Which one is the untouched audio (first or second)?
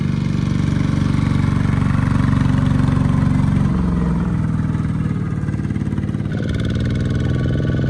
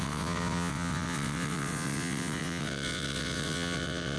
first